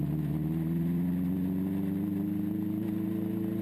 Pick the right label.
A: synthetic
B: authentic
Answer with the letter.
B